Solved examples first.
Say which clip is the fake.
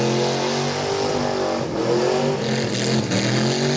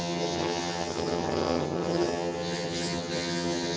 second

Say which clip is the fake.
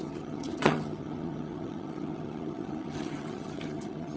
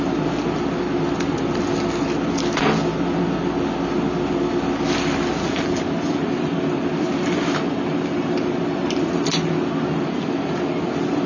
first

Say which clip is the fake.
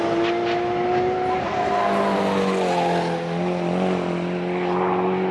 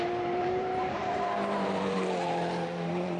second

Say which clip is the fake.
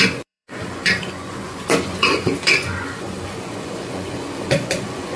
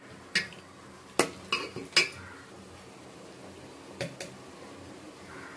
first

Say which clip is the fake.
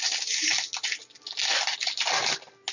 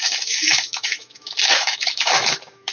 second